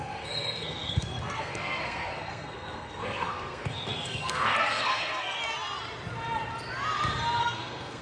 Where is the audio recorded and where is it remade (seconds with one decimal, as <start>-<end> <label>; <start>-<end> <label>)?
0.0-5.4 remade; 5.4-7.4 recorded; 7.4-8.0 remade